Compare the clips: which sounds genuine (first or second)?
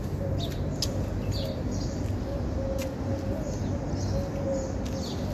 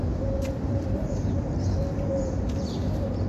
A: first